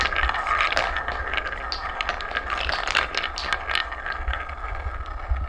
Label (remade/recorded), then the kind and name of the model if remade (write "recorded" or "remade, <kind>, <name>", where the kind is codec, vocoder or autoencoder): recorded